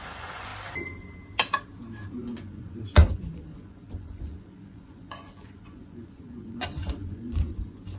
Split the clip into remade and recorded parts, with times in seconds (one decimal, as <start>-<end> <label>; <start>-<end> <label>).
0.0-0.5 remade; 0.5-2.1 recorded; 2.1-8.0 remade